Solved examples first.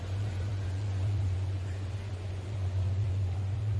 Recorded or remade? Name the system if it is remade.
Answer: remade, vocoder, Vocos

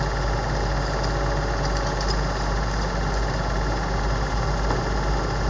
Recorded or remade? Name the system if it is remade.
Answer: recorded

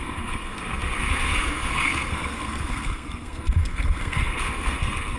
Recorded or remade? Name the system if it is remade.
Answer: remade, codec, SNAC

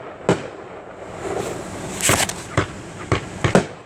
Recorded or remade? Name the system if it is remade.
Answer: recorded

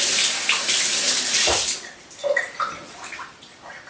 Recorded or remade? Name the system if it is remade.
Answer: recorded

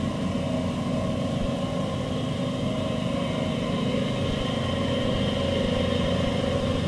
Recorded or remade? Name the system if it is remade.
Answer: remade, vocoder, BigVGAN v2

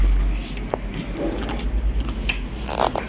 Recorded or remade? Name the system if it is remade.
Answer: recorded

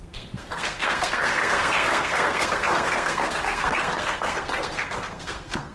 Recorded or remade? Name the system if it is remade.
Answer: remade, codec, SNAC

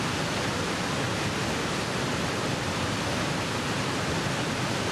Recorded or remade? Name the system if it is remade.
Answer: recorded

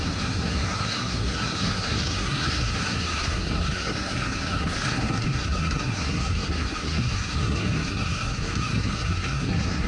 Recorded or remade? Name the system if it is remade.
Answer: remade, codec, SNAC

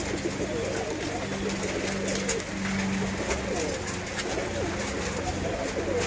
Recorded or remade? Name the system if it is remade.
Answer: recorded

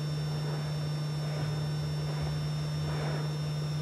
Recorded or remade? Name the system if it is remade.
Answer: recorded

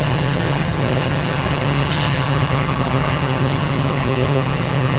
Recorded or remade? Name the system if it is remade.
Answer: remade, vocoder, HiFi-GAN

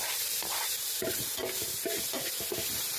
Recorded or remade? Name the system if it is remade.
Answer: recorded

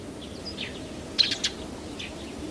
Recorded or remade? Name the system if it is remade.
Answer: recorded